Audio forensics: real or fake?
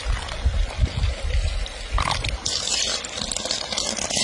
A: real